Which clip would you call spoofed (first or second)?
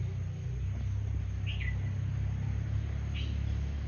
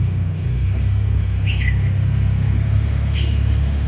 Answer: second